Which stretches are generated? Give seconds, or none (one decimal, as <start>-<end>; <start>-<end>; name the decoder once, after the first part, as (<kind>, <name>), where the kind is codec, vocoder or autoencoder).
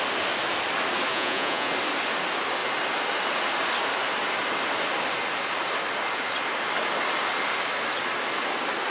1.1-1.7 (vocoder, Vocos)